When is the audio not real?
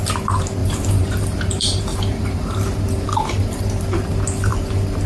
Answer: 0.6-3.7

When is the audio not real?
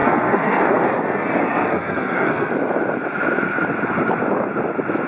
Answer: 0.0-0.9; 1.4-2.5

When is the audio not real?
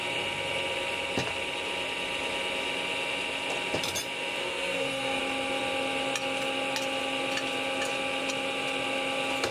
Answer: 4.4-5.2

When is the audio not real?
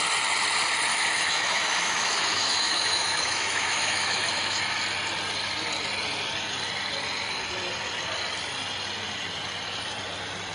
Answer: 0.9-4.6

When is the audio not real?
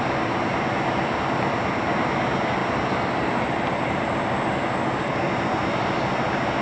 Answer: none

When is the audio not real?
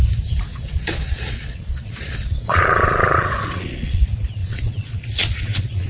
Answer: 0.5-4.0; 4.4-5.9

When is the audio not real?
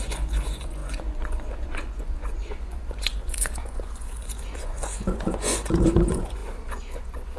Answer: 0.0-7.4